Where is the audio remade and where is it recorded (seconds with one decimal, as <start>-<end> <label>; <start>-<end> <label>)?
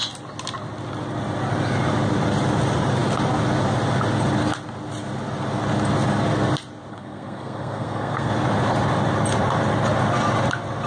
0.0-6.9 recorded; 6.9-8.3 remade; 8.3-10.9 recorded